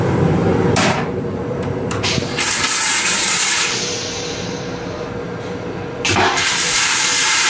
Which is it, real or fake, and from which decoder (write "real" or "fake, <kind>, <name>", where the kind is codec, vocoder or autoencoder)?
fake, vocoder, BigVGAN v2